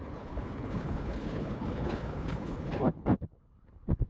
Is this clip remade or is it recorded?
remade